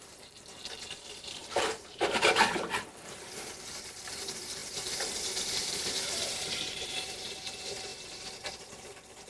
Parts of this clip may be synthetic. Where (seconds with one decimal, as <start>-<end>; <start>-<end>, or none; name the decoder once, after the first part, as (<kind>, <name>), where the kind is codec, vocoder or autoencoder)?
0.0-9.3 (vocoder, BigVGAN v2)